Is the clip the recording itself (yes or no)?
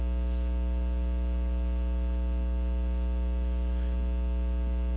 yes